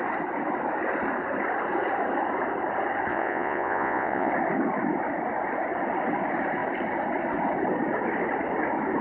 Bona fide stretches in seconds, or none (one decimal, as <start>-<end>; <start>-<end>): 0.0-3.1; 4.3-9.0